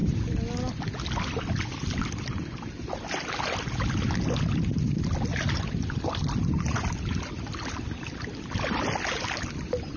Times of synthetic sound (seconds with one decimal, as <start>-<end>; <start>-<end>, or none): none